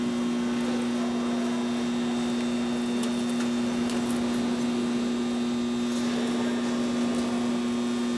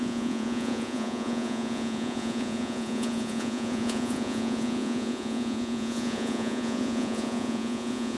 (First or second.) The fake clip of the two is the second